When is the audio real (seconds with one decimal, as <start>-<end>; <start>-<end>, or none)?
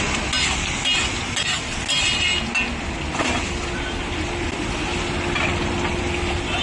0.0-6.6